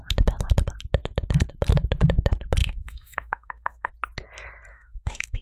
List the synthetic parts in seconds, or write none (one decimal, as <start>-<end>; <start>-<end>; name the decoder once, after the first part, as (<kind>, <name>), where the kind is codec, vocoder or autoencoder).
2.6-3.9 (autoencoder, DAC-VAE); 4.7-5.4